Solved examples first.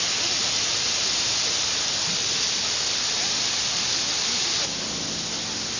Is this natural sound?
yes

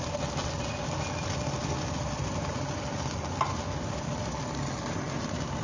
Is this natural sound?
yes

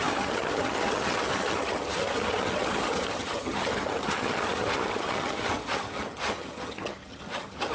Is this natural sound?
no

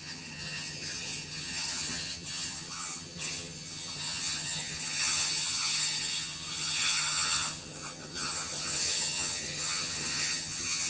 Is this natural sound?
no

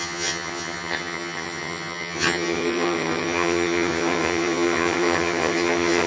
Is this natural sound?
no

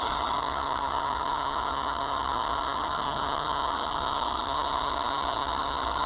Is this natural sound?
no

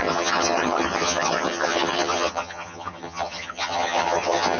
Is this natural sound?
no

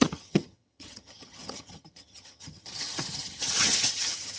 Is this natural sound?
no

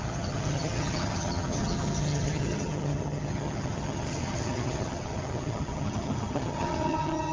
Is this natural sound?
no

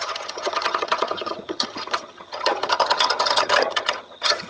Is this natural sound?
no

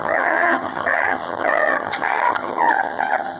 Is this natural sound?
no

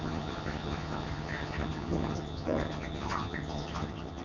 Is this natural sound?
no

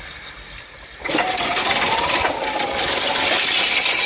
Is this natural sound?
yes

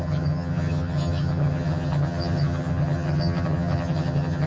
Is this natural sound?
no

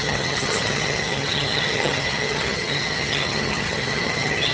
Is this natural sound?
no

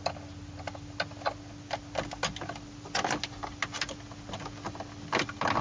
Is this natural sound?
yes